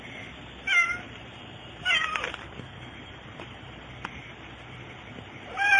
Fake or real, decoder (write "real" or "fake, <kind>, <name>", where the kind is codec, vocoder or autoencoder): real